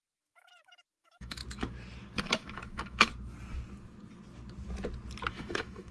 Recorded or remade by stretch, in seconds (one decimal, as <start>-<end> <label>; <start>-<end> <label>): 0.0-1.4 remade; 1.4-2.2 recorded; 2.2-3.1 remade; 3.1-5.3 recorded; 5.3-5.9 remade